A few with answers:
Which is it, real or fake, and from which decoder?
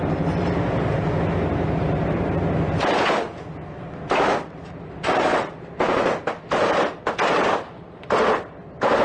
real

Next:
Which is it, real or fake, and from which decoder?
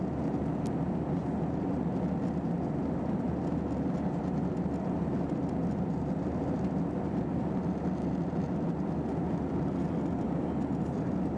real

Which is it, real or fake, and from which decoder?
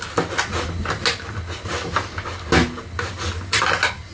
real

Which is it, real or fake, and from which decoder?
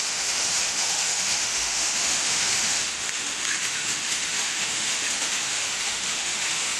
fake, autoencoder, DAC-VAE